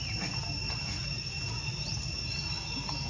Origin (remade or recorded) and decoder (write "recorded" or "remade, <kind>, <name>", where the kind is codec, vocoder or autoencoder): recorded